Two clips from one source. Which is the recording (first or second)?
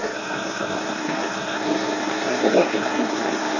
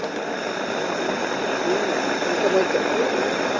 second